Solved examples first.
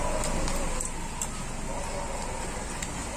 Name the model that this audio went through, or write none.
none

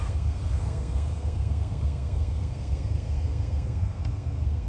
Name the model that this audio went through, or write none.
codec, SNAC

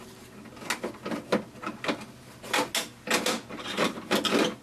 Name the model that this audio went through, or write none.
none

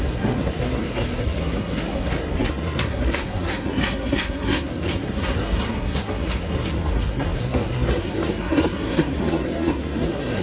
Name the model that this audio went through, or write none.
codec, SNAC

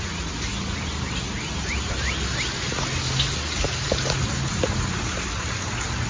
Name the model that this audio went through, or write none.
none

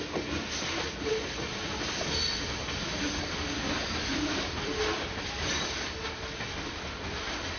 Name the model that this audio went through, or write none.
none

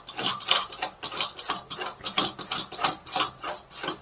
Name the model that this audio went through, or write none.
none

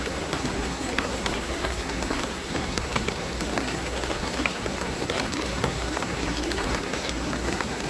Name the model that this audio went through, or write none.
codec, SNAC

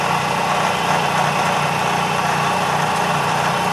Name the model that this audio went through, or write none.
vocoder, BigVGAN v2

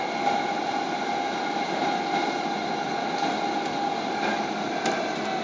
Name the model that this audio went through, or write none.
none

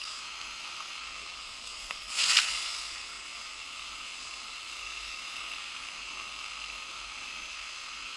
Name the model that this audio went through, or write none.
codec, SNAC